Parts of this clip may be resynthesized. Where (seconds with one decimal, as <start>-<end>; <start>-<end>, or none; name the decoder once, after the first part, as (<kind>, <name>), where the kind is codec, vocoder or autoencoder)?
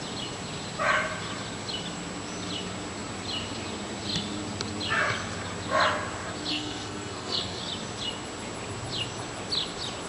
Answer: 6.5-7.6 (codec, SNAC)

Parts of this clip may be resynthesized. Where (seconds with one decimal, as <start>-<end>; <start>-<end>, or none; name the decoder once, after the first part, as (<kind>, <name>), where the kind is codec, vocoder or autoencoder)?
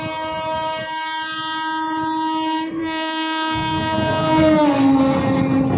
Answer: 2.8-5.0 (codec, SNAC)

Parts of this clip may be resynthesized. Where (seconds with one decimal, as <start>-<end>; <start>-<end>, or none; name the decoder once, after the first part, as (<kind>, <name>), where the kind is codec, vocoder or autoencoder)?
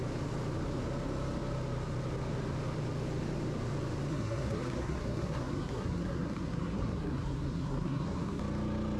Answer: 4.1-8.4 (codec, SNAC)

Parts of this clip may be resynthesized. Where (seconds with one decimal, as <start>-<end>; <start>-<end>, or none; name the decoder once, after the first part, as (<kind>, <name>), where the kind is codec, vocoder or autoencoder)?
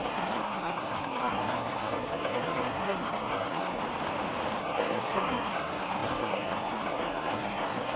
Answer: 0.0-3.8 (codec, SNAC); 4.6-8.0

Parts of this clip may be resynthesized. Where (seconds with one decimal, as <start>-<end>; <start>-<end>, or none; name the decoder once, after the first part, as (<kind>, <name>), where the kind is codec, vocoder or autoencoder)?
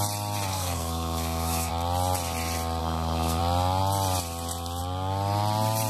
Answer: 0.5-1.7 (codec, SNAC); 2.8-3.4